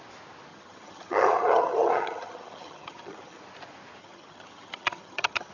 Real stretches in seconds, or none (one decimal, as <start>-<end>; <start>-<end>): 0.0-0.5; 3.4-4.0

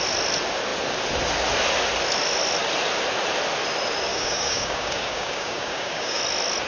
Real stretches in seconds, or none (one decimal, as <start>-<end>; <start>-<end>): 0.0-4.1; 6.2-6.7

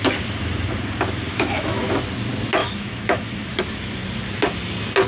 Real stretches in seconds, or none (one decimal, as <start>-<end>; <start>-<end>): 0.0-1.3; 1.8-2.6; 3.6-5.1

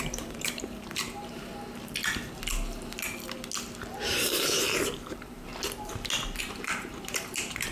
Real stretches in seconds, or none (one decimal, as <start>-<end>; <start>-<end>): 1.5-3.8; 5.5-6.4

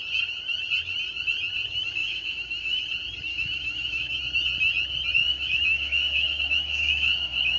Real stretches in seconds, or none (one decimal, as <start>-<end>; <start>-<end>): 0.0-2.0; 2.8-3.3; 4.2-5.2